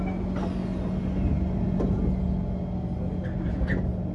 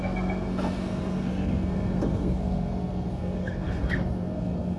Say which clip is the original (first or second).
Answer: first